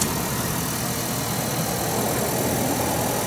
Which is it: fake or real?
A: real